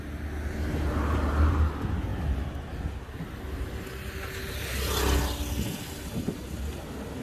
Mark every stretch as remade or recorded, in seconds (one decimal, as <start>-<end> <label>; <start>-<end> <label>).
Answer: 0.0-7.2 recorded